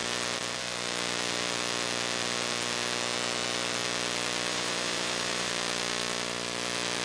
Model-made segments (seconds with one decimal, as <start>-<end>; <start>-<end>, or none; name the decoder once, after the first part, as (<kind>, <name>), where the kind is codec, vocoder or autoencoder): 4.5-5.5 (vocoder, BigVGAN v2)